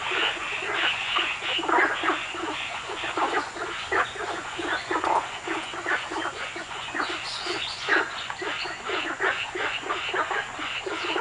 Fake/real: fake